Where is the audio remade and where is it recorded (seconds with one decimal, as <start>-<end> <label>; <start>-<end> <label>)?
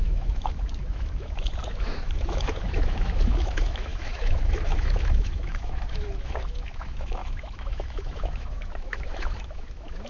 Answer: 0.0-10.1 remade